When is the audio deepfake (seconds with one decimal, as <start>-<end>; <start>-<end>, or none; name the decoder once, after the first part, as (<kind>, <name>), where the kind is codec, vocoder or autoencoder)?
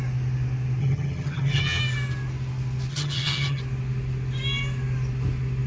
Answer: 0.8-1.8 (vocoder, HiFi-GAN); 2.9-3.6